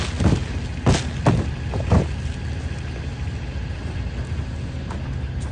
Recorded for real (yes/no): yes